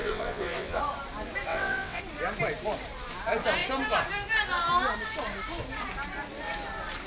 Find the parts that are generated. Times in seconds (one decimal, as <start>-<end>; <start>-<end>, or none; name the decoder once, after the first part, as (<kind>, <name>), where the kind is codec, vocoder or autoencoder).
0.0-0.8 (vocoder, WaveNeXt); 1.5-2.0